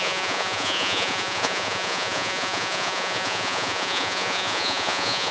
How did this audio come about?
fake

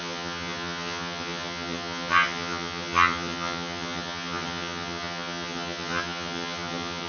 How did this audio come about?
fake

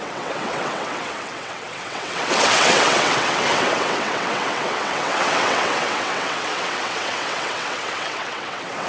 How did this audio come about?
fake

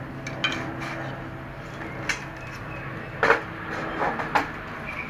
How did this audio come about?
real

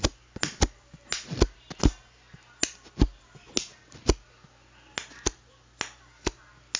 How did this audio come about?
real